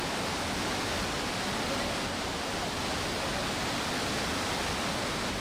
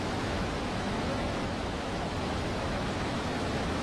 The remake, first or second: second